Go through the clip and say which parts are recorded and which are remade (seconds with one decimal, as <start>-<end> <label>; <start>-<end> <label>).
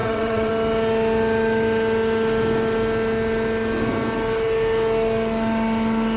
0.0-0.5 remade; 0.5-6.2 recorded